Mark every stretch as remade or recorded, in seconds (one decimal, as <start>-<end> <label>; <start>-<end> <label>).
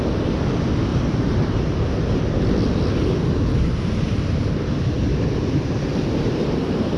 0.0-0.9 recorded; 0.9-1.5 remade; 1.5-5.1 recorded; 5.1-6.4 remade; 6.4-7.0 recorded